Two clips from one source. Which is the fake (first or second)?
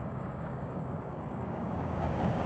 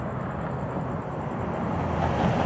first